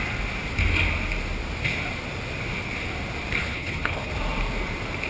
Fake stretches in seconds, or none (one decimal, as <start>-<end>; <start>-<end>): 3.4-4.1